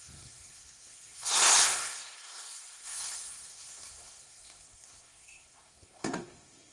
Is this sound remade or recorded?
remade